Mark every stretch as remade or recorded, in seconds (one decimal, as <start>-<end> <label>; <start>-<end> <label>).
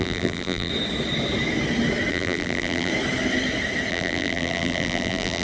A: 0.0-0.7 remade; 0.7-2.1 recorded; 2.1-2.9 remade; 2.9-3.9 recorded; 3.9-5.4 remade